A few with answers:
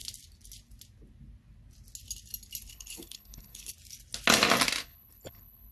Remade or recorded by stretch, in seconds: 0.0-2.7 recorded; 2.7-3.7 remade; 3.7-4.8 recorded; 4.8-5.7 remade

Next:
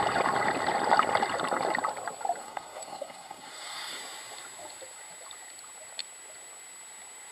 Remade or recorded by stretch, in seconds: 0.0-2.4 recorded; 2.4-4.0 remade; 4.0-7.3 recorded

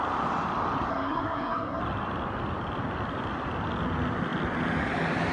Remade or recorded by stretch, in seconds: 0.0-0.9 recorded; 0.9-1.8 remade; 1.8-5.3 recorded

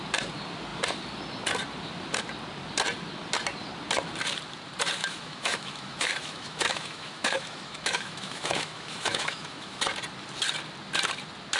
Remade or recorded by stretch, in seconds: 0.0-5.0 recorded; 5.0-9.8 remade; 9.8-11.6 recorded

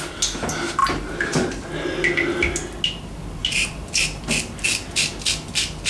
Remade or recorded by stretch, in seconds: 0.0-0.8 recorded; 0.8-1.6 remade; 1.6-3.4 recorded; 3.4-4.2 remade; 4.2-5.9 recorded

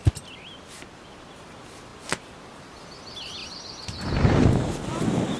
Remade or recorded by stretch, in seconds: 0.0-5.4 recorded

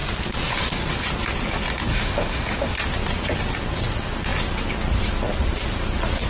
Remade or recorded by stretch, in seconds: 0.0-1.9 recorded; 1.9-2.7 remade; 2.7-6.3 recorded